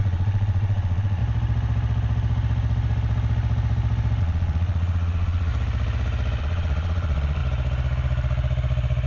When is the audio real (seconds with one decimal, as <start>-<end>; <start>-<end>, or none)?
1.2-4.2; 5.5-6.4; 7.4-9.1